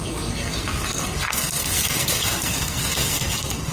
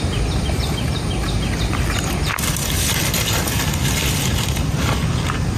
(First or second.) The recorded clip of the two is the second